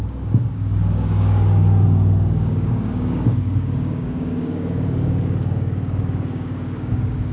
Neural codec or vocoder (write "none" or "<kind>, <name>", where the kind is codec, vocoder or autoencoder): codec, DAC